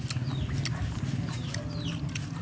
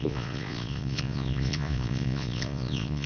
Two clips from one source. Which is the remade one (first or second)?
second